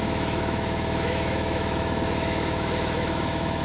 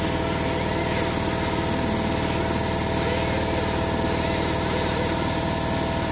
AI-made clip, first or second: first